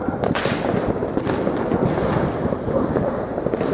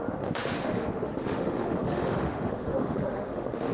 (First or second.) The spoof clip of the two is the second